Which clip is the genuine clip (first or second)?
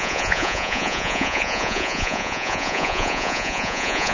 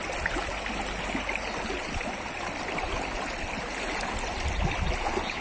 second